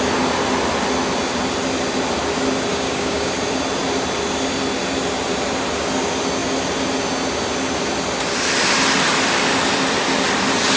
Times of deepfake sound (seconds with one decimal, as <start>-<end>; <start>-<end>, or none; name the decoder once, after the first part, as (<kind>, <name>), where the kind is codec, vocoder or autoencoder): 2.7-3.3 (codec, DAC)